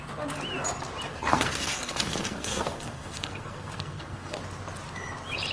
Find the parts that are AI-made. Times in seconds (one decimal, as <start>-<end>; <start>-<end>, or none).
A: 1.1-4.4